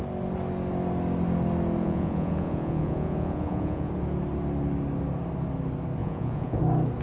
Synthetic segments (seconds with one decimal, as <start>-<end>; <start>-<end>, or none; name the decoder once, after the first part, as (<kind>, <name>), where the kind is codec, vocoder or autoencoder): 1.8-3.9 (vocoder, Vocos); 6.0-6.6